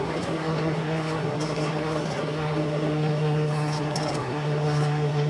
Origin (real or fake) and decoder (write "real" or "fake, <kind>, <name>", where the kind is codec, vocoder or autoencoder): fake, codec, SNAC